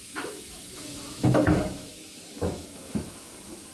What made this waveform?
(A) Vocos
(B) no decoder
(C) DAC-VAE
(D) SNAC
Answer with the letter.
C